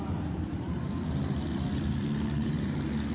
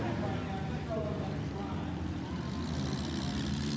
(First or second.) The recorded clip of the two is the second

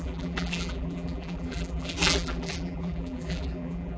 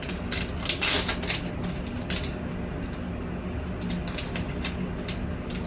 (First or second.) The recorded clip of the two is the second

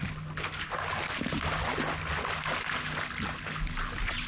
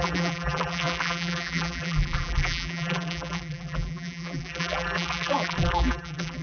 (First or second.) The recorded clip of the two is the first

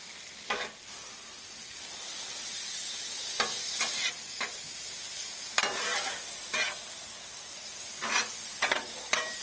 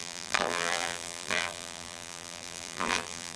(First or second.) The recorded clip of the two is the first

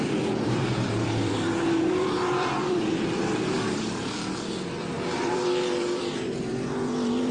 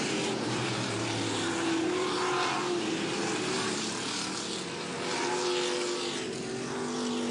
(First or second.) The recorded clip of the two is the second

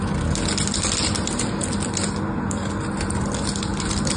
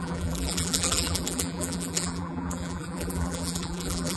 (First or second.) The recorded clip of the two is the first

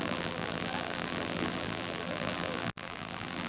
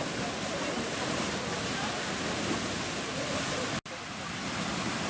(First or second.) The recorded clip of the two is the second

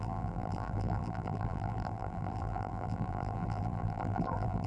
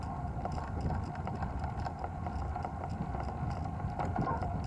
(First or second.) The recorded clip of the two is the second